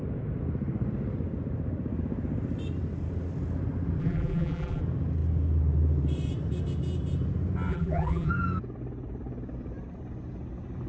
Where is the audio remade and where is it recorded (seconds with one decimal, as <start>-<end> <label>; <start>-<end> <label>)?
0.0-4.0 recorded; 4.0-4.8 remade; 4.8-7.7 recorded; 7.7-8.3 remade; 8.3-10.9 recorded